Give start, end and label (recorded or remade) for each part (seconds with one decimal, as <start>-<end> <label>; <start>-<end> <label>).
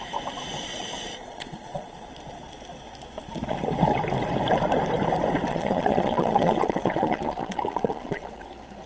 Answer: 0.0-0.7 recorded; 0.7-2.1 remade; 2.1-5.5 recorded; 5.5-8.5 remade; 8.5-8.9 recorded